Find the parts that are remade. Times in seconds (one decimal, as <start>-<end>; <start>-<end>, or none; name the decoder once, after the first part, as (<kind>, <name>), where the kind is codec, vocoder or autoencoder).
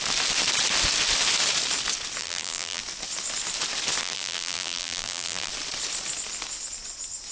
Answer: 2.2-2.8 (vocoder, BigVGAN v2); 4.0-5.5